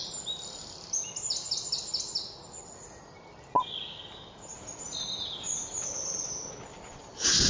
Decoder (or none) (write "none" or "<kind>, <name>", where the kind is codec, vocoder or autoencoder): none